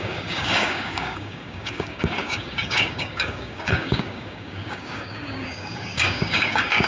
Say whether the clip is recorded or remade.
remade